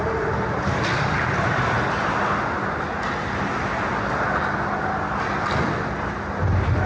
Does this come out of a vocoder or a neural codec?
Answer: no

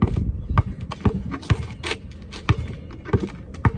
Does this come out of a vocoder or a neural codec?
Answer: no